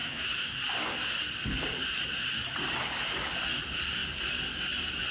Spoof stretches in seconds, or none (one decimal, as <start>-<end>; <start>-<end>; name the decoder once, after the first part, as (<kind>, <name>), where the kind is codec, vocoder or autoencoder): 0.0-0.6 (autoencoder, DAC-VAE)